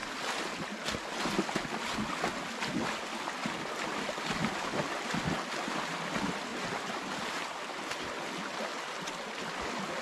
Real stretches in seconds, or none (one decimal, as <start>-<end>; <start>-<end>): 0.0-4.4; 5.1-6.5; 7.4-10.0